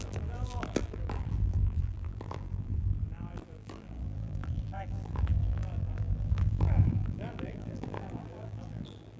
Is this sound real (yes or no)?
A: no